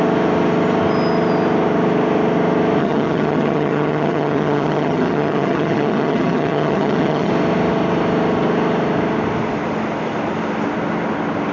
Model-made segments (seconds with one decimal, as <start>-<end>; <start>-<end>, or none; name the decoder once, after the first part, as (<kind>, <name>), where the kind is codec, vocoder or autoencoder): 2.8-7.3 (vocoder, HiFi-GAN)